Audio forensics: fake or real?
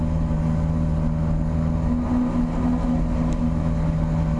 real